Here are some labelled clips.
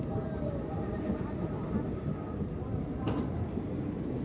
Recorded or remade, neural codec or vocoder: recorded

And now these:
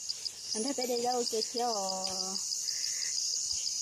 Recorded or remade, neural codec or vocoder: recorded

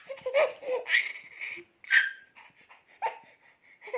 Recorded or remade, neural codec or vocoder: recorded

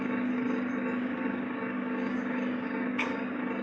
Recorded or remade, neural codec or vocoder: remade, codec, DAC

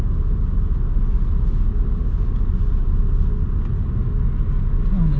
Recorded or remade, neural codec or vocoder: recorded